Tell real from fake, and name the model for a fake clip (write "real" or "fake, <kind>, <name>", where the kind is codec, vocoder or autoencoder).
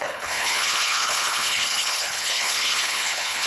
fake, codec, HILCodec